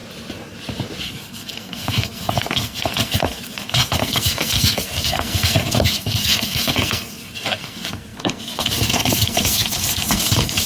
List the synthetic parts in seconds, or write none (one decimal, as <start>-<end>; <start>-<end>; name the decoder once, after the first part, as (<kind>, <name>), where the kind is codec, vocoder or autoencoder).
1.0-10.7 (codec, SNAC)